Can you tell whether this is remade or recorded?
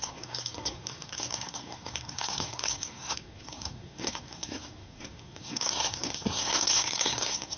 remade